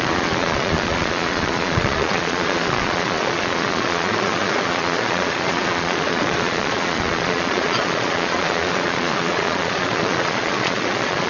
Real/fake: fake